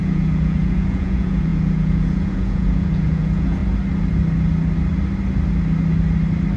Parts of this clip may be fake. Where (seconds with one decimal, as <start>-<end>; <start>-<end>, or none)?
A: 0.0-3.6